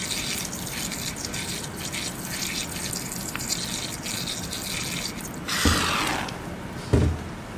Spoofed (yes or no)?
no